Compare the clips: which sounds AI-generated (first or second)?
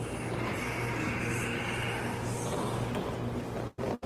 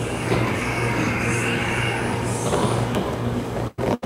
second